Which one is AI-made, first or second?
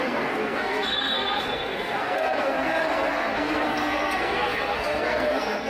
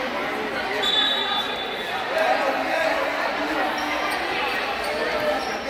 first